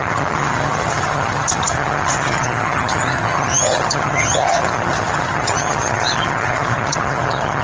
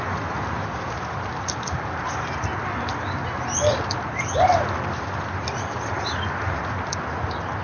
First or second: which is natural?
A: second